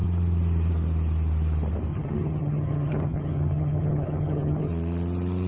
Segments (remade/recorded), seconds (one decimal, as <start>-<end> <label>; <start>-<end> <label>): 0.0-1.9 recorded; 1.9-4.7 remade; 4.7-5.5 recorded